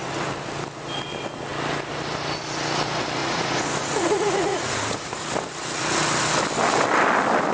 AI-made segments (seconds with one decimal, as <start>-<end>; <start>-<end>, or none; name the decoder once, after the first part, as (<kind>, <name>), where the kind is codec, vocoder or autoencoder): 3.2-5.3 (vocoder, Vocos)